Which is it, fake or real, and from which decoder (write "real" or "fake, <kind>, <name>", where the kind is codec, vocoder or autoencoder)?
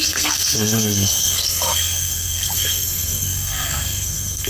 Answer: fake, codec, SNAC